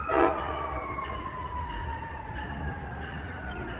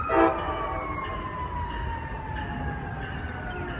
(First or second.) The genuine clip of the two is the second